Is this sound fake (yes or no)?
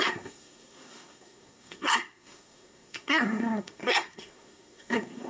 yes